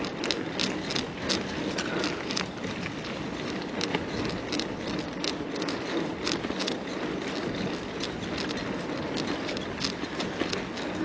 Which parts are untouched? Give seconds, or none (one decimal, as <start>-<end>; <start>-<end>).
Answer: 0.0-11.0